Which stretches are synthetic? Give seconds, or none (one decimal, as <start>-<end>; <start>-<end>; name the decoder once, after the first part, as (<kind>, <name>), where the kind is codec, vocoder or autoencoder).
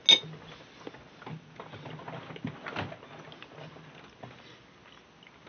none